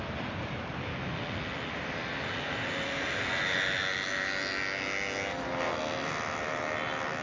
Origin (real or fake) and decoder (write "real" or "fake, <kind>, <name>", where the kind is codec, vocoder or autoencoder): real